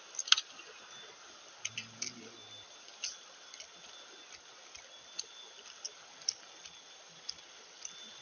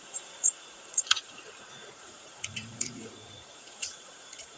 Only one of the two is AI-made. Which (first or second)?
second